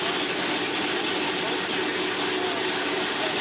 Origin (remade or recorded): recorded